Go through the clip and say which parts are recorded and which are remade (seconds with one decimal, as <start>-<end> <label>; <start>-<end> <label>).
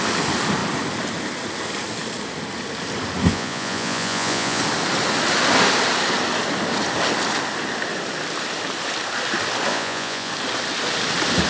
0.0-3.3 recorded; 3.3-4.6 remade; 4.6-9.7 recorded; 9.7-10.3 remade; 10.3-11.5 recorded